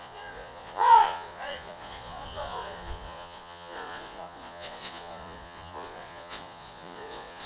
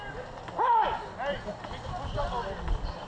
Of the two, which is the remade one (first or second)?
first